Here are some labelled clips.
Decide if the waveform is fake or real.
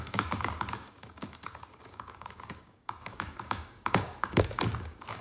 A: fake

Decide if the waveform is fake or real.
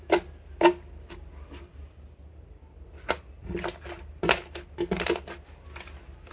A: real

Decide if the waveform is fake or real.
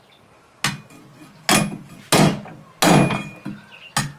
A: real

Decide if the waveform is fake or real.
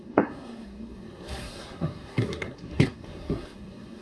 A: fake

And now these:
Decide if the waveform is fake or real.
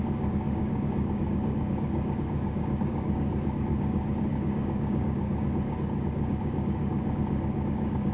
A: fake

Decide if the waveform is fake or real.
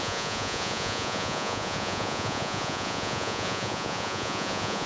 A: fake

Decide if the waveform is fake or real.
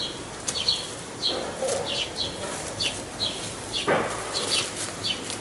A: real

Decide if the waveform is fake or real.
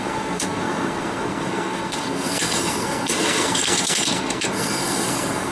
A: fake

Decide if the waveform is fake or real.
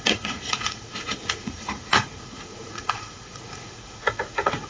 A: fake